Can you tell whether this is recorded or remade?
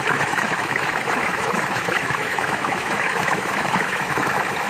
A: remade